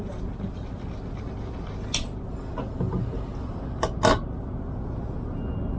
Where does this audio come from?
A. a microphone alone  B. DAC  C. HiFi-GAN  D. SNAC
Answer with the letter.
A